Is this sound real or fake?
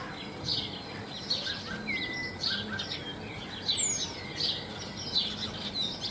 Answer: real